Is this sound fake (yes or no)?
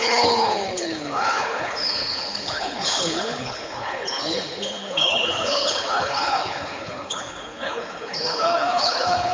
yes